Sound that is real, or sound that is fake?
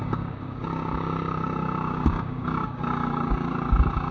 fake